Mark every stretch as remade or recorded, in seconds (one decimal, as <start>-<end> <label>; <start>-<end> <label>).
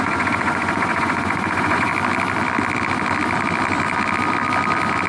0.0-1.9 remade; 1.9-5.1 recorded